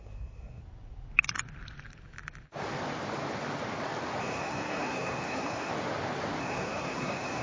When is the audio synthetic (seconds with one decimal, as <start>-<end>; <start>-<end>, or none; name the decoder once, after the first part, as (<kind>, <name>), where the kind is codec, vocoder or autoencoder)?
0.0-0.6 (codec, SNAC); 4.2-5.7; 6.4-7.4